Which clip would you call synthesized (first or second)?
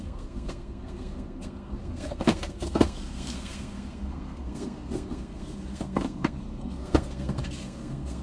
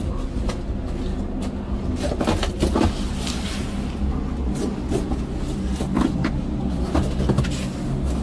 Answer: first